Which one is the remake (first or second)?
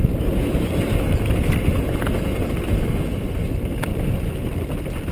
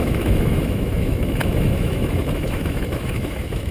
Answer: second